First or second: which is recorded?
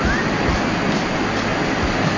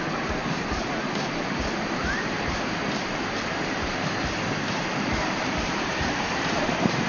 first